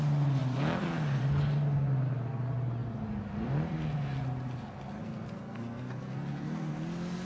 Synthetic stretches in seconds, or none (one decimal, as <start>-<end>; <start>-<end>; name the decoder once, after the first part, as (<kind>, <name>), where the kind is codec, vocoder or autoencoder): 5.0-6.7 (codec, SNAC)